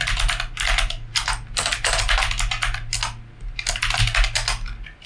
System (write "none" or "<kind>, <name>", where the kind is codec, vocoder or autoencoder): none